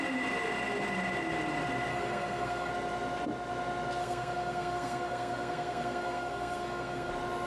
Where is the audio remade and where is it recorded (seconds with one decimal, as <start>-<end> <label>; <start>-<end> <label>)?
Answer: 0.0-1.9 recorded; 1.9-2.7 remade; 2.7-4.0 recorded; 4.0-7.1 remade; 7.1-7.5 recorded